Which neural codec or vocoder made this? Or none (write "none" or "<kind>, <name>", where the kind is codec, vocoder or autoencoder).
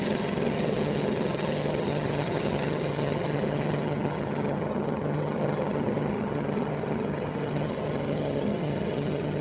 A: vocoder, HiFi-GAN